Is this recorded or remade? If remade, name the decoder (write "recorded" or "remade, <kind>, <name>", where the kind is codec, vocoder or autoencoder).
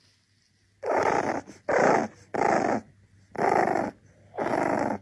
recorded